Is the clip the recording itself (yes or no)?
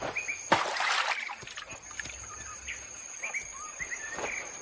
yes